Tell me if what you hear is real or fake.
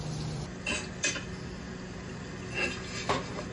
real